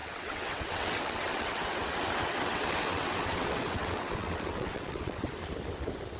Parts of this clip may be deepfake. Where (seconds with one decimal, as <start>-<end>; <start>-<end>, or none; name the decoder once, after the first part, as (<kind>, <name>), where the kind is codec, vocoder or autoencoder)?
0.0-5.3 (vocoder, WaveNeXt)